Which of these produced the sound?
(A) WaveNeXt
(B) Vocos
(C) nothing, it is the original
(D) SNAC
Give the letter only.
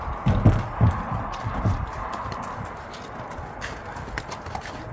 C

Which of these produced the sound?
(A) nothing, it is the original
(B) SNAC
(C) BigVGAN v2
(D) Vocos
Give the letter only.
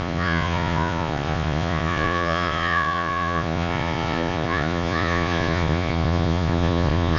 D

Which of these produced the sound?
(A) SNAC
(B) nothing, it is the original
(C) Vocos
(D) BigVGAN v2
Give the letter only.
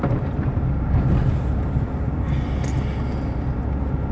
B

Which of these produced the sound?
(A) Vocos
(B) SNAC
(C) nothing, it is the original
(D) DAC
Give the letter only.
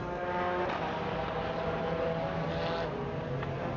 C